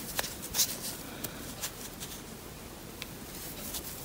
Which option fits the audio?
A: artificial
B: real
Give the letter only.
B